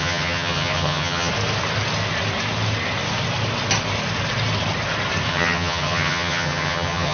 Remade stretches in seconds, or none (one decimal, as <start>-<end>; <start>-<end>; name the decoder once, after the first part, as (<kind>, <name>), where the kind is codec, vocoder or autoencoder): 0.0-1.3 (vocoder, HiFi-GAN); 5.3-7.1